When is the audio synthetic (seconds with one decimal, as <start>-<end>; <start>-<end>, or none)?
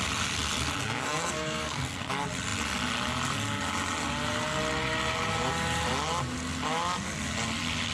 0.8-2.1